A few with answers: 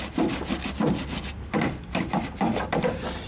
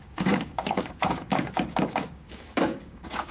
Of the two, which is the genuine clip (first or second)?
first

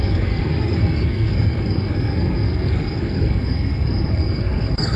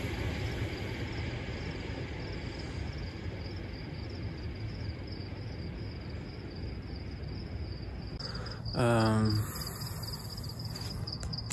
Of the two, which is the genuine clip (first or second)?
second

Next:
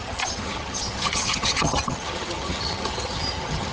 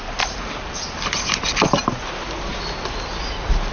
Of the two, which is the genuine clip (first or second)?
second